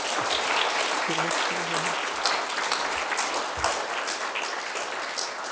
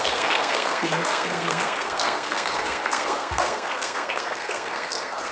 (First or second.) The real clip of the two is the first